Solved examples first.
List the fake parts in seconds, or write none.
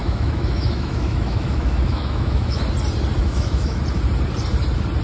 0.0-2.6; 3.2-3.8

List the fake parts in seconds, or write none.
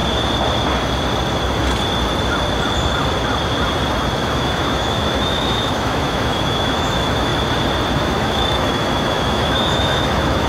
4.2-7.3; 8.0-10.5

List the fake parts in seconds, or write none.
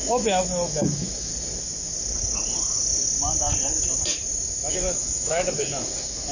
0.0-1.3; 4.7-6.3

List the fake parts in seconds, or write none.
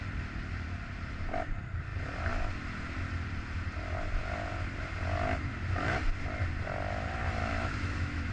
7.4-8.3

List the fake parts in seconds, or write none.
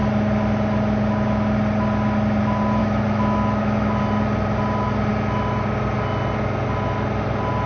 2.8-4.0